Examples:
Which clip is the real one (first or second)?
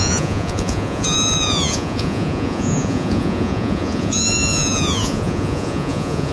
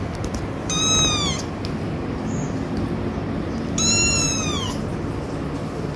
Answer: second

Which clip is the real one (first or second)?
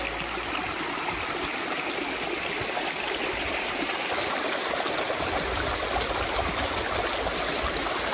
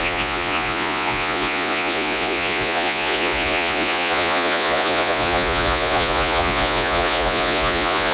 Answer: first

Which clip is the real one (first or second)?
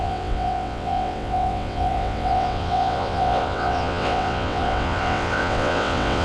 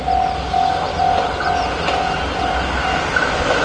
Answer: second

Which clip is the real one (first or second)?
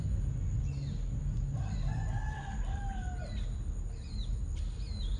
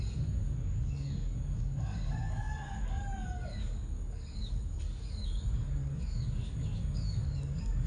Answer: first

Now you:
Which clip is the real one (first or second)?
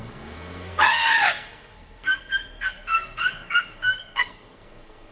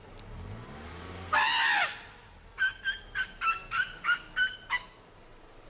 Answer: second